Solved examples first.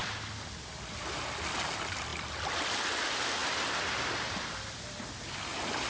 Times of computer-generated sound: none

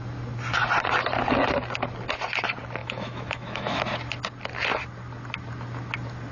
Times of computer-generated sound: 2.8-3.8 (autoencoder, DAC-VAE)

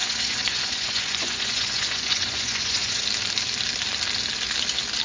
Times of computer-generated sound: 0.0-3.0 (vocoder, Vocos)

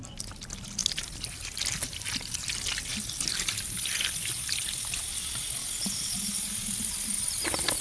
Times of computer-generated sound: none

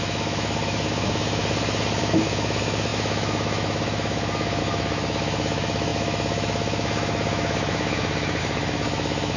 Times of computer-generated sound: 0.0-1.4 (autoencoder, DAC-VAE); 2.0-9.4

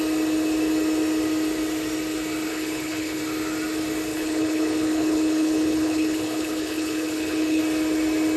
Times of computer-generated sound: 2.5-3.2 (codec, HILCodec); 4.1-7.6

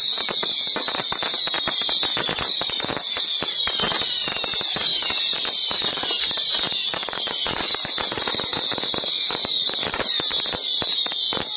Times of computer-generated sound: 4.9-8.0 (vocoder, BigVGAN v2); 8.5-10.1

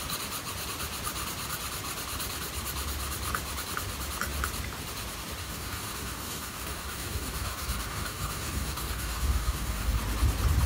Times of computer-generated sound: 5.4-10.0 (codec, DAC)